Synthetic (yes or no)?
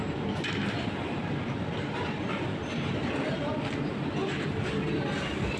no